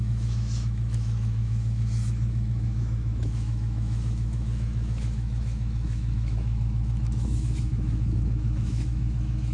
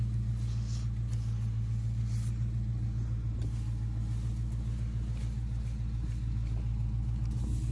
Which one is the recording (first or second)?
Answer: second